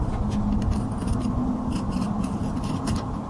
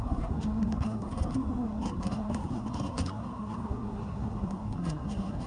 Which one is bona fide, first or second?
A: first